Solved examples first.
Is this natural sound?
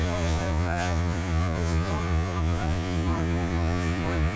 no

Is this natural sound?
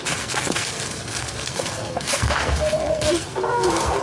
no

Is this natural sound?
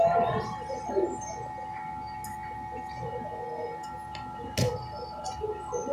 yes